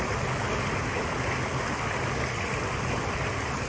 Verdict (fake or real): real